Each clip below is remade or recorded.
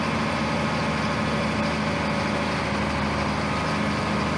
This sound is recorded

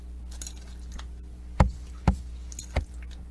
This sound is recorded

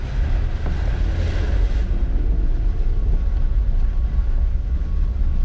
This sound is recorded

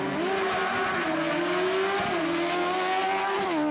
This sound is recorded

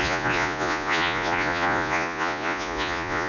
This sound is remade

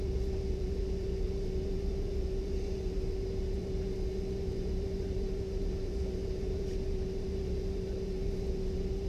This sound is remade